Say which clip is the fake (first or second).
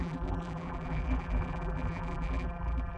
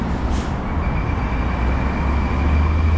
first